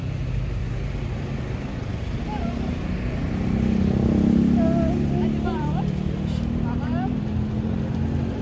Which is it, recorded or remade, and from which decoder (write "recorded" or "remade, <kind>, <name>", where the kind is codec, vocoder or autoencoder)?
recorded